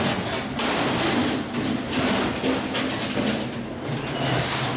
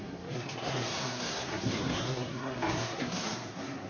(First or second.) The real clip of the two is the first